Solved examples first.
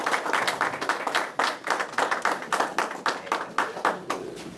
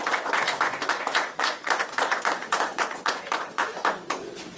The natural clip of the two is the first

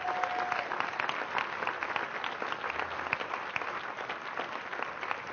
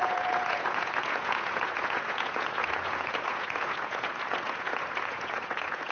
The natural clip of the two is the first